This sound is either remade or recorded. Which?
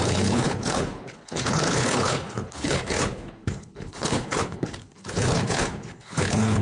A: remade